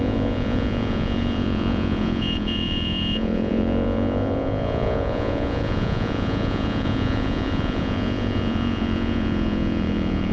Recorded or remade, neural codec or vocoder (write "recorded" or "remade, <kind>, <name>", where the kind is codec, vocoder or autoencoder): remade, vocoder, Vocos